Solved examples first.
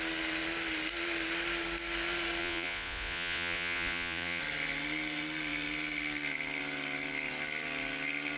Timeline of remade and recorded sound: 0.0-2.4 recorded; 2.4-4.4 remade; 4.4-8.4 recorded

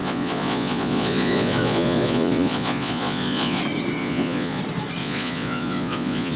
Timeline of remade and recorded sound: 0.0-3.6 remade; 3.6-4.0 recorded; 4.0-4.6 remade; 4.6-5.0 recorded; 5.0-6.4 remade

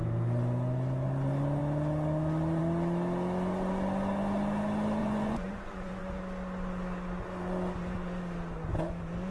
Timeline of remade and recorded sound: 0.0-5.0 recorded; 5.0-6.2 remade; 6.2-9.3 recorded

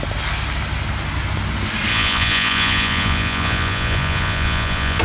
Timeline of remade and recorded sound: 0.0-1.9 recorded; 1.9-5.0 remade

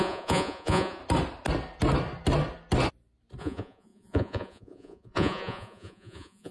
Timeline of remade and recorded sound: 0.0-1.0 remade; 1.0-3.4 recorded; 3.4-6.5 remade

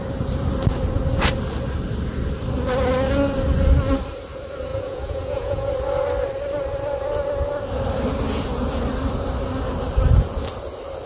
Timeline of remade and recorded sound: 0.0-4.7 recorded; 4.7-5.7 remade; 5.7-11.1 recorded

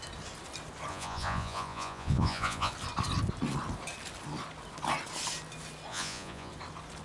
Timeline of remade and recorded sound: 0.0-0.9 recorded; 0.9-2.7 remade; 2.7-5.9 recorded; 5.9-6.5 remade; 6.5-7.0 recorded

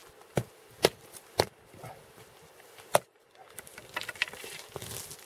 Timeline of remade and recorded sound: 0.0-5.3 recorded